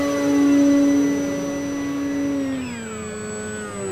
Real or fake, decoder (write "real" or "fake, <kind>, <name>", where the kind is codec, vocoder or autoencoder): real